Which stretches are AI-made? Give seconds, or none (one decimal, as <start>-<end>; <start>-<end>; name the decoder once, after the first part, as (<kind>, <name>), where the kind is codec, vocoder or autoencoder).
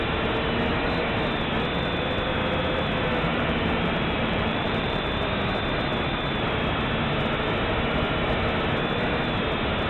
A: 3.3-5.1 (vocoder, BigVGAN v2)